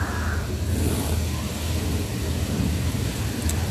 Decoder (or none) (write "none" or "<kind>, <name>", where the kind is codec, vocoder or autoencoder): none